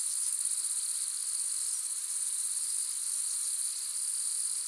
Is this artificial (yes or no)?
no